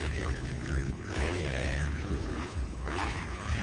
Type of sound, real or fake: fake